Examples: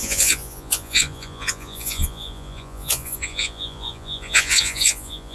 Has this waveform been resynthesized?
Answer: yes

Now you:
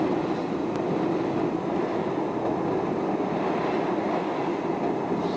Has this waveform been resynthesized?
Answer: no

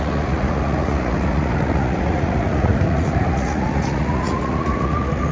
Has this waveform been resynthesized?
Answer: yes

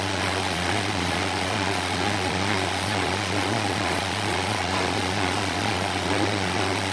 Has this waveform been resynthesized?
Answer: yes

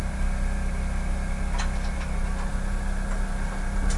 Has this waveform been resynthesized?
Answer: no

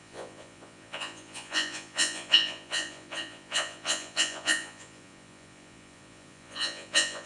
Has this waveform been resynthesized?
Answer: yes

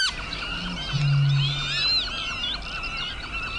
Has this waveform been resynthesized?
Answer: no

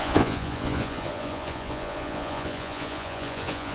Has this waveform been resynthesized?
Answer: yes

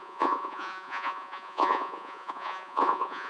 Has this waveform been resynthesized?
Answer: yes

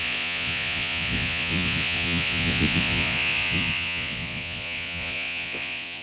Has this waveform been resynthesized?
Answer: yes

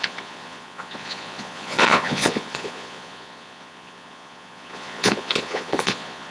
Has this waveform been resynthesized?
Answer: yes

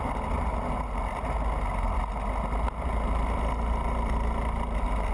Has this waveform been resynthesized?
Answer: no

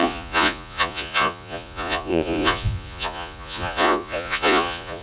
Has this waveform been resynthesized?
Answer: yes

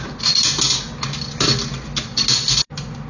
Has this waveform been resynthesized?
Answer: no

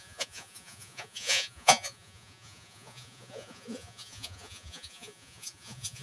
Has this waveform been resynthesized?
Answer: yes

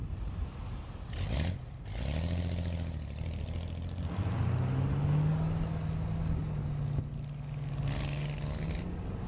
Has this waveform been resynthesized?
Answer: no